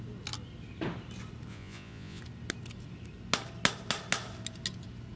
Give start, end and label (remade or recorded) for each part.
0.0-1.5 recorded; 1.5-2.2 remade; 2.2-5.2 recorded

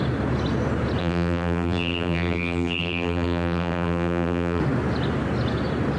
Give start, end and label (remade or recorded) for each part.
0.0-1.0 recorded; 1.0-4.6 remade; 4.6-6.0 recorded

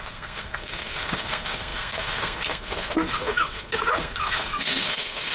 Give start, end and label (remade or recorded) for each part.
0.0-5.3 remade